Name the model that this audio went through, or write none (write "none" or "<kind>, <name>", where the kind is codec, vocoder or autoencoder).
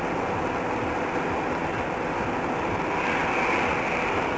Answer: none